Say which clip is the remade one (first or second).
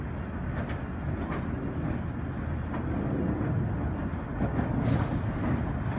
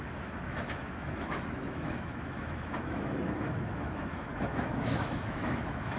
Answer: second